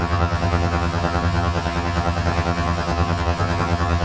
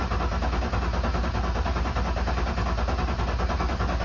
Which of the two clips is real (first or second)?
second